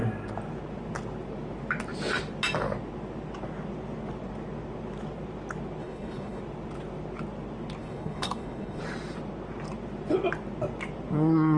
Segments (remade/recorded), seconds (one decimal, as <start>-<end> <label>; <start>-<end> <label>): 0.0-5.8 recorded; 5.8-6.4 remade; 6.4-7.8 recorded; 7.8-8.8 remade; 8.8-11.6 recorded